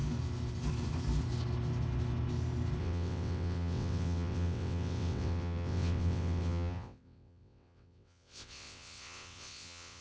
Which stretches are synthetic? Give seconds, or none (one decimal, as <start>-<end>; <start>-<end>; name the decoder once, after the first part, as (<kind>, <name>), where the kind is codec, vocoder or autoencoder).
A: 2.8-10.0 (vocoder, WaveNeXt)